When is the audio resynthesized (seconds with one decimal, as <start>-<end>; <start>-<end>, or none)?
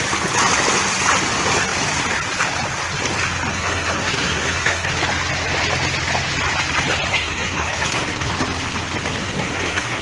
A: 3.5-4.9; 7.1-8.3; 9.2-10.0